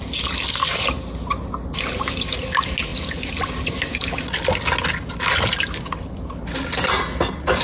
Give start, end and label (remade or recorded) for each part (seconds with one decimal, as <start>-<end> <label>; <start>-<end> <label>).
0.0-7.6 recorded